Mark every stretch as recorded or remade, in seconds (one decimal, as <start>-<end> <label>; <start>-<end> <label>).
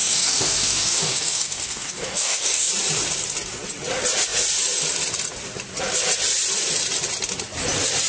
0.0-2.7 remade; 2.7-8.1 recorded